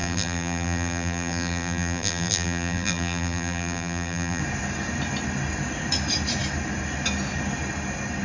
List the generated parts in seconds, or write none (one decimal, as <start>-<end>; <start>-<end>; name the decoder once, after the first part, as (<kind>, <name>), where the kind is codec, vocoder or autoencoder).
0.0-4.4 (vocoder, BigVGAN v2)